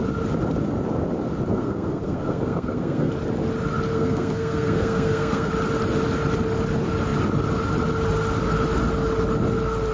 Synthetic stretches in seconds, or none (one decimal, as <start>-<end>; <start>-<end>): 1.5-3.1; 3.9-5.5